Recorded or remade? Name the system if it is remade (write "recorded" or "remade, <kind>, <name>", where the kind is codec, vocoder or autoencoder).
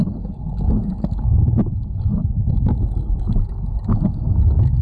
remade, codec, DAC